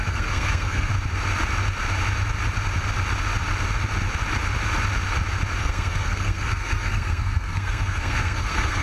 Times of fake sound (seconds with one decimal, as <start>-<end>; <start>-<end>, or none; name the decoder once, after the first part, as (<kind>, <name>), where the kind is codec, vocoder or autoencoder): 0.0-0.9 (codec, SNAC); 5.6-8.8